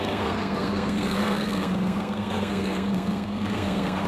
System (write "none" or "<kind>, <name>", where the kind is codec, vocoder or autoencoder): codec, SNAC